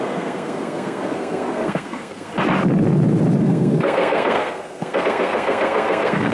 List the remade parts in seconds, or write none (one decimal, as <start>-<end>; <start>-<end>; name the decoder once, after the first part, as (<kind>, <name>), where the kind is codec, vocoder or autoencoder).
0.0-2.3 (codec, SNAC); 3.4-6.3